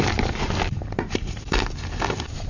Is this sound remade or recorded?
remade